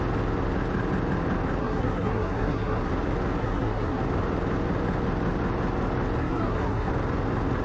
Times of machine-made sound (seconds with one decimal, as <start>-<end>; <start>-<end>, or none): 1.6-2.9; 3.4-4.0; 6.2-6.9